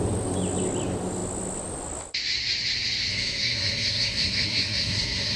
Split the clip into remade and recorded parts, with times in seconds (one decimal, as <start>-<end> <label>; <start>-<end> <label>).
0.0-3.1 recorded; 3.1-5.4 remade